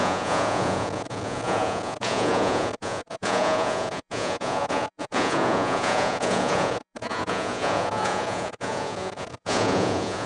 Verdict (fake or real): fake